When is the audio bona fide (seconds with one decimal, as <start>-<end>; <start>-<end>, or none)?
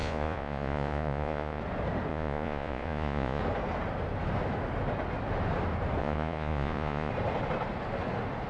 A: 1.6-2.1; 3.4-6.0; 7.1-8.5